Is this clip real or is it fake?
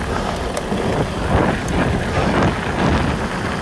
real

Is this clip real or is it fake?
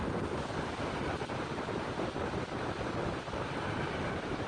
real